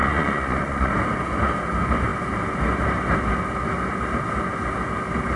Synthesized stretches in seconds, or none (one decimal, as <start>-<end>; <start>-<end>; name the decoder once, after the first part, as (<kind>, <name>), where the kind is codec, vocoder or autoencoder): 0.0-0.9 (vocoder, Vocos)